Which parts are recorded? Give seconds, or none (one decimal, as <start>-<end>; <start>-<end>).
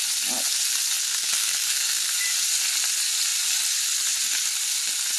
0.0-1.0; 2.1-5.2